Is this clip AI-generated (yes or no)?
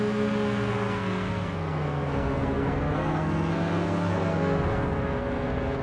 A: yes